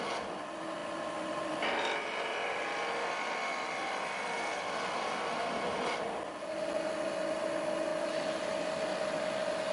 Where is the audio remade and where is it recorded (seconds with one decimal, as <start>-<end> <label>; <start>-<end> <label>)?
0.0-9.7 recorded